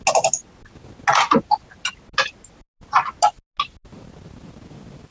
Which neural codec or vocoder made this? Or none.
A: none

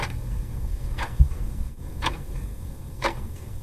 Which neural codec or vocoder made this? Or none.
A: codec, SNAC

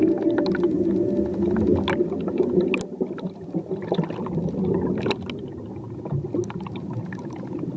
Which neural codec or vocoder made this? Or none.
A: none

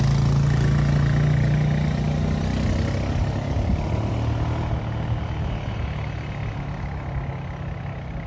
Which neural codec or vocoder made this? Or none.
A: none